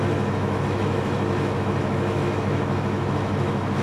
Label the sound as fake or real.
fake